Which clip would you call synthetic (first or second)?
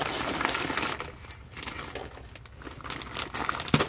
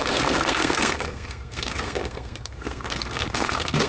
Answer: second